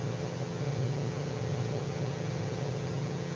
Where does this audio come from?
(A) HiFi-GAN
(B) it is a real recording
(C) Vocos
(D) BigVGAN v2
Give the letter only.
A